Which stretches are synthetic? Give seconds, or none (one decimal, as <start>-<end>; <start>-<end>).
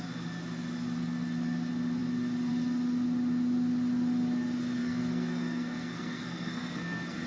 4.8-7.3